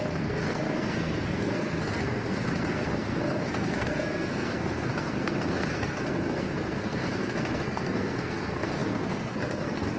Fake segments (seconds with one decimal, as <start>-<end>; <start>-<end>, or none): 0.0-10.0